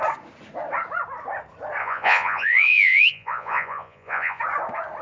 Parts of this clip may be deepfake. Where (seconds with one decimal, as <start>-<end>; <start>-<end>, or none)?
1.8-4.4